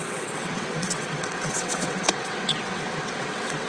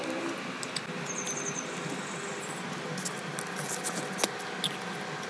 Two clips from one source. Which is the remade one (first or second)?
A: first